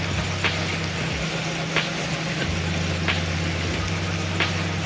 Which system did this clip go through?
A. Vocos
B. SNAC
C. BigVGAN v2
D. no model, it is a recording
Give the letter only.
D